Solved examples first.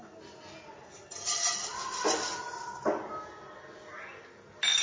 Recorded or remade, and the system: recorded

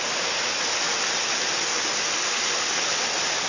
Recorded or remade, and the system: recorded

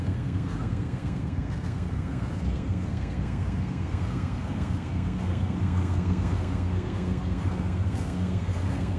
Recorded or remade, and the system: remade, codec, SNAC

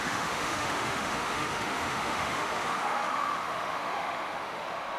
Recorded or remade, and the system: remade, autoencoder, DAC-VAE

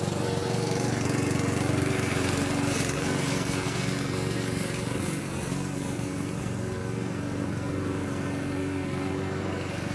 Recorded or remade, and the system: remade, codec, SNAC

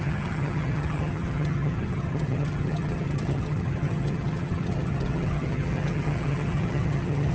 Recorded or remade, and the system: remade, vocoder, HiFi-GAN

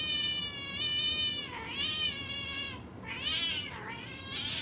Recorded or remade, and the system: recorded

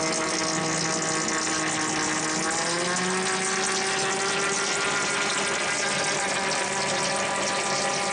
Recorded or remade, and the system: recorded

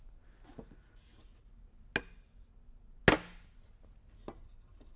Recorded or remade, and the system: recorded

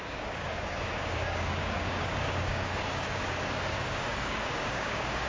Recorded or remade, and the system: remade, codec, DAC